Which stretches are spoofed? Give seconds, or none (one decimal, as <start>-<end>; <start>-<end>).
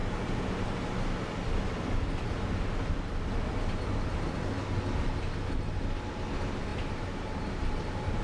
0.0-1.3; 6.7-8.2